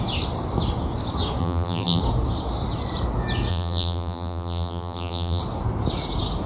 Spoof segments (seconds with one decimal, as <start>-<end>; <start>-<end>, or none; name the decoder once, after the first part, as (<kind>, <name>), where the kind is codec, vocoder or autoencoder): 1.4-2.0 (vocoder, BigVGAN v2); 3.5-5.4